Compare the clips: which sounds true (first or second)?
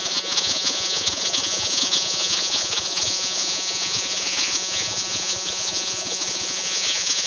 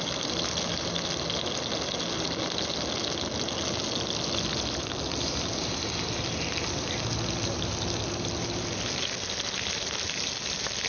second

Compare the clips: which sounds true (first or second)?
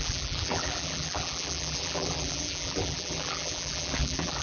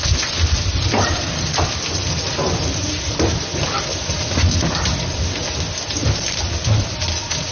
second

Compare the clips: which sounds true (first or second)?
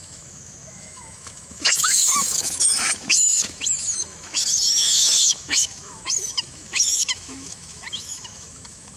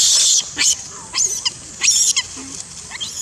second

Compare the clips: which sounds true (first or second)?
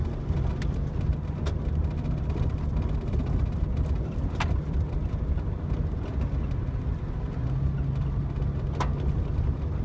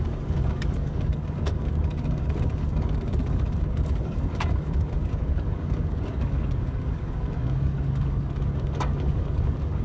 first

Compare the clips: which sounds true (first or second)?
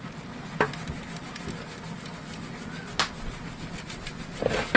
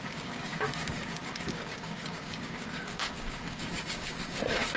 first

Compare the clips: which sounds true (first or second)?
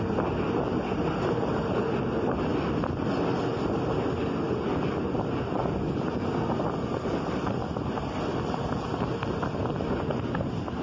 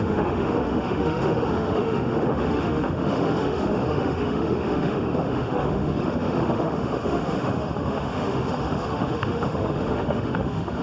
first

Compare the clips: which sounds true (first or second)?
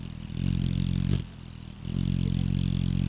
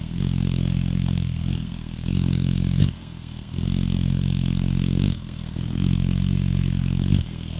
first